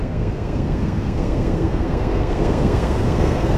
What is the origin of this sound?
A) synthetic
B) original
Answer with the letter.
A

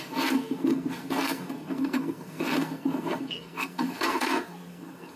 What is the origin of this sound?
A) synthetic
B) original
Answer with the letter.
A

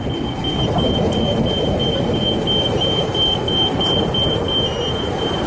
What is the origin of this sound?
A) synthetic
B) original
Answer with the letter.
B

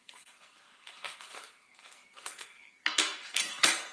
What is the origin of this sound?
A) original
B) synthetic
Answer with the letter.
B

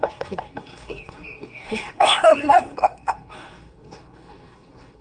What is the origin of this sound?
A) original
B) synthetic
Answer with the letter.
B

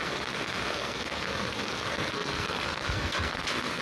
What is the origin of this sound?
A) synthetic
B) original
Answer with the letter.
A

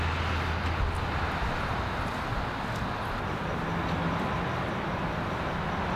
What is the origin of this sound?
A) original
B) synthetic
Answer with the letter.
A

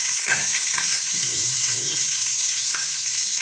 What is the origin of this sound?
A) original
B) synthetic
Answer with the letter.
B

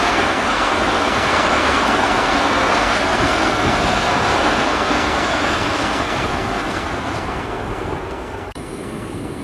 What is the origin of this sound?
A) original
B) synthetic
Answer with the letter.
B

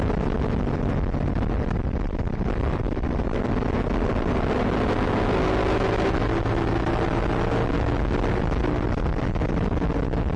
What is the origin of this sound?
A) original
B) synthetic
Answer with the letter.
A